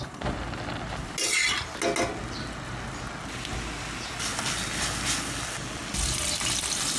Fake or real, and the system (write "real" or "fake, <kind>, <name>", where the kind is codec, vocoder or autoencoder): real